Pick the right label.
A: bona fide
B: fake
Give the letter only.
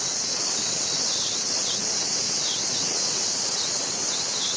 B